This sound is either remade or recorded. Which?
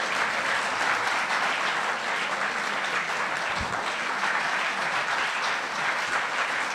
recorded